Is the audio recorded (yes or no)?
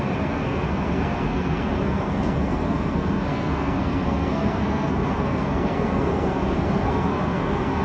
no